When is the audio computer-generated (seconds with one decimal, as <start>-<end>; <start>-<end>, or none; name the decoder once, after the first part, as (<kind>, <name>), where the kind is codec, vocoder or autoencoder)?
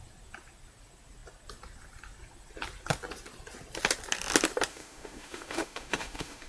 4.7-6.5 (autoencoder, DAC-VAE)